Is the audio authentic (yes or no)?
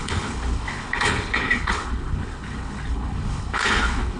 no